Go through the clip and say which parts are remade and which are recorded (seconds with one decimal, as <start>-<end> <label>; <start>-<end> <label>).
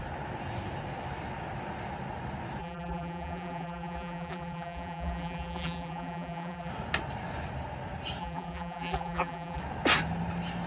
0.0-2.6 recorded; 2.6-6.7 remade; 6.7-8.2 recorded; 8.2-9.6 remade; 9.6-10.7 recorded